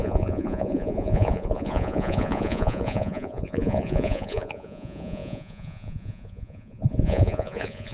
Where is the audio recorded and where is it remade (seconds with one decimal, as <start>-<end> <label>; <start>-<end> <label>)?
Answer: 0.0-7.9 remade